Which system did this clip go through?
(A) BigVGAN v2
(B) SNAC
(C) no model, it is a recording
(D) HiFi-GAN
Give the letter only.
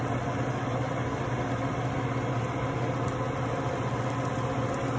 C